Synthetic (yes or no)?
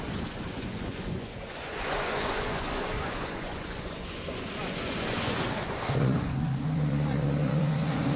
yes